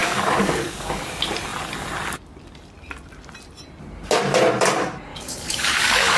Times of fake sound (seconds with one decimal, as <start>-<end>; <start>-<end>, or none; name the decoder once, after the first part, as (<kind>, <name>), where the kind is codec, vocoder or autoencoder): 0.0-1.1 (codec, DAC); 5.1-6.2